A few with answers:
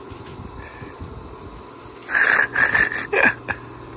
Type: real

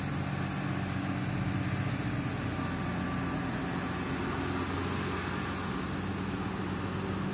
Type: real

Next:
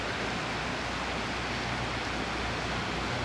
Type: real